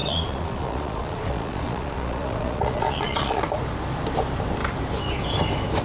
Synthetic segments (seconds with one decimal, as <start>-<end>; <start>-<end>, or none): 0.0-3.4